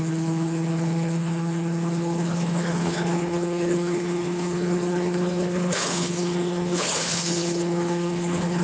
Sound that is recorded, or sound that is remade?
remade